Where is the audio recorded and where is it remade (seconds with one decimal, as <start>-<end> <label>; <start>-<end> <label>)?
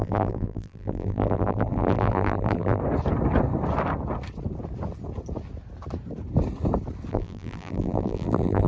0.0-2.8 remade; 2.8-7.1 recorded; 7.1-8.7 remade